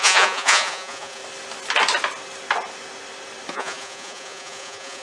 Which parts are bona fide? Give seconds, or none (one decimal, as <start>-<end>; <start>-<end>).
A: 1.2-3.5